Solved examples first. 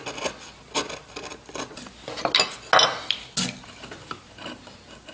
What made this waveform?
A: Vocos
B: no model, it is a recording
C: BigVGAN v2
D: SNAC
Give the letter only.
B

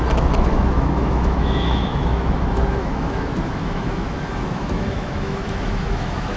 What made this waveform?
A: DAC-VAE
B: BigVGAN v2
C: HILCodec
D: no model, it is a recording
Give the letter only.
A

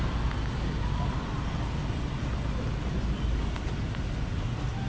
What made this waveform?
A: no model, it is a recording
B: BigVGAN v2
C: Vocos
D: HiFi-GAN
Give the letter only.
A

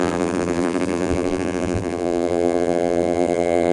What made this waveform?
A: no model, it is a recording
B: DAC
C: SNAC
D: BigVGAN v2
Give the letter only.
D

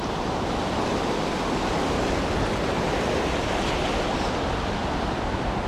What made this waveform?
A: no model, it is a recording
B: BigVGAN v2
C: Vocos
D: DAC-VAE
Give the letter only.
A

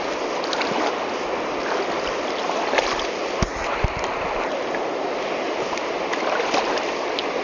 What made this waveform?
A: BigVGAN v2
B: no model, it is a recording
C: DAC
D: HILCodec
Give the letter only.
B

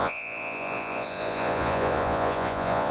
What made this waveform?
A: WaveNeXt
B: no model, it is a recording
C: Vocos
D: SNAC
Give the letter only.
C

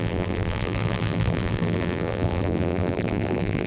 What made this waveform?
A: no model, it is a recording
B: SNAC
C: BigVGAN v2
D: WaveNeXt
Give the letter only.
C